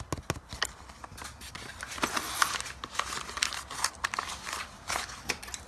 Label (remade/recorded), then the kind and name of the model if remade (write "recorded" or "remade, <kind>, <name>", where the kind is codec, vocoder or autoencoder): recorded